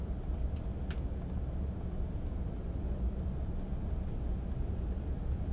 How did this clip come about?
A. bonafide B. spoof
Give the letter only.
A